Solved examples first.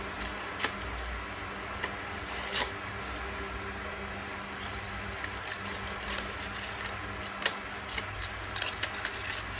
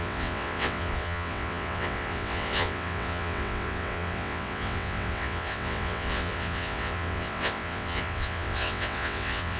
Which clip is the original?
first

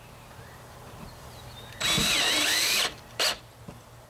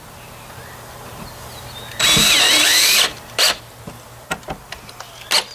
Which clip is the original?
second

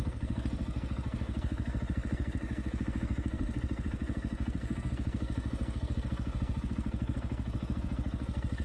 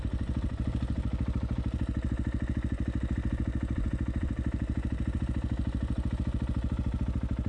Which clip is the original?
second